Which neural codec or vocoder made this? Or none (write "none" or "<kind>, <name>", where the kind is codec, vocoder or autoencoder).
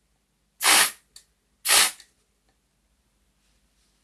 none